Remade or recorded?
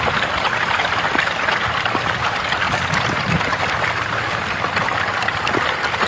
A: recorded